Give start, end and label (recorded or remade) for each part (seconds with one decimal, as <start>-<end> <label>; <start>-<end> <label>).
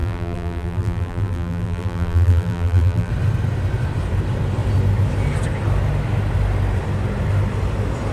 0.0-3.1 remade; 3.1-8.1 recorded